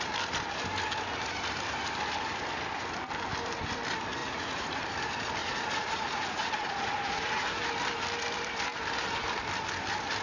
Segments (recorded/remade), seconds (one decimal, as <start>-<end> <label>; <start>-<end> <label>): 0.0-4.2 recorded; 4.2-4.8 remade; 4.8-5.4 recorded; 5.4-7.7 remade; 7.7-10.2 recorded